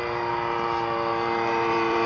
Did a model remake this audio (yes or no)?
yes